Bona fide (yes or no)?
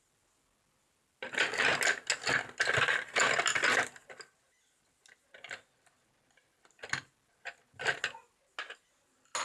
yes